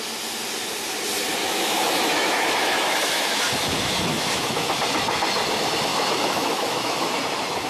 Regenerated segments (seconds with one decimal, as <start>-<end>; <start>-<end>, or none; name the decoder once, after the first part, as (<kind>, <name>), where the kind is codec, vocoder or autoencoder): 1.4-3.5 (autoencoder, DAC-VAE); 4.1-4.8; 5.9-7.2